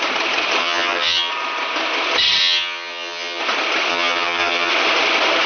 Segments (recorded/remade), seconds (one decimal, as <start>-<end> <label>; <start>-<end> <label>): 0.0-0.6 recorded; 0.6-1.3 remade; 1.3-2.4 recorded; 2.4-3.4 remade; 3.4-3.9 recorded; 3.9-4.7 remade; 4.7-5.5 recorded

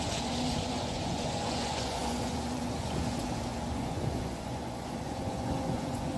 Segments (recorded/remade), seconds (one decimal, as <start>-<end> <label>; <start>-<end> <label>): 0.0-6.2 remade